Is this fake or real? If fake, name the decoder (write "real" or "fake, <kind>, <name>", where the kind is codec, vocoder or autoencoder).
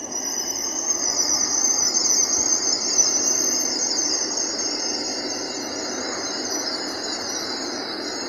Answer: real